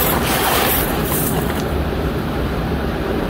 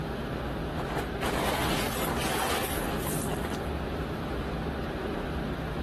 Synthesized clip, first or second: first